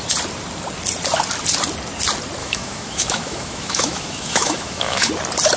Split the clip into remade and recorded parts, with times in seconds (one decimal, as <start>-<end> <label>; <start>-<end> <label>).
0.0-2.4 recorded; 2.4-5.1 remade; 5.1-5.6 recorded